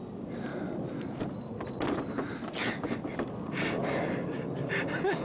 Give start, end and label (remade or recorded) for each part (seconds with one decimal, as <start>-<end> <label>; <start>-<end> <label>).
0.0-5.2 recorded